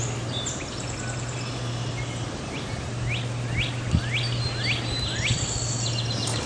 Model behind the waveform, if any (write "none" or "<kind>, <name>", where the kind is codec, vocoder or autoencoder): none